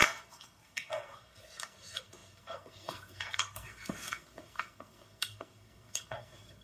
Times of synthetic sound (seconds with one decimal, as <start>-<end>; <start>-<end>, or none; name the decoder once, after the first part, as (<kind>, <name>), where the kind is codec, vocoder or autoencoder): 0.0-6.6 (codec, SNAC)